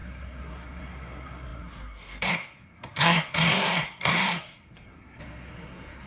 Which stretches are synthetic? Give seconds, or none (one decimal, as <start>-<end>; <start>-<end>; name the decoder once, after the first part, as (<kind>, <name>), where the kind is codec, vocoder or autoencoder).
0.0-6.1 (codec, SNAC)